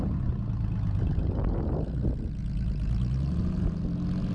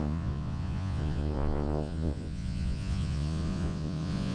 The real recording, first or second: first